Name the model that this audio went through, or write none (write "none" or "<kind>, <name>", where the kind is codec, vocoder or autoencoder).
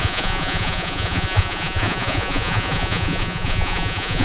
vocoder, Vocos